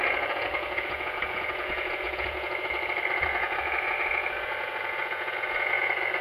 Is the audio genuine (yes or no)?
no